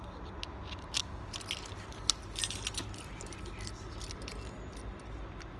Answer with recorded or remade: recorded